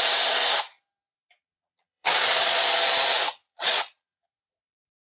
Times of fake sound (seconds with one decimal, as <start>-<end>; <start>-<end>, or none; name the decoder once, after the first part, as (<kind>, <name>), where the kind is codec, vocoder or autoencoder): 1.4-2.6 (vocoder, Vocos); 3.4-4.3